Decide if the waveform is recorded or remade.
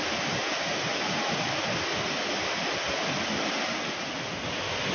recorded